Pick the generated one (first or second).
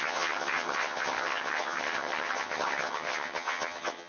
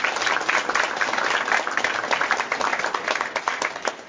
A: first